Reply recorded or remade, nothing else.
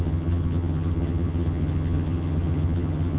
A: remade